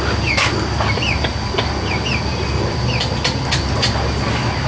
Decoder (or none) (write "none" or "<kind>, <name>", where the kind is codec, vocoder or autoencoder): none